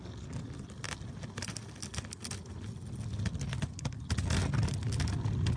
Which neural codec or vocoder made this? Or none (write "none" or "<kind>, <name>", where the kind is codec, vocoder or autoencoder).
none